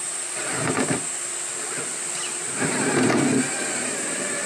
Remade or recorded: recorded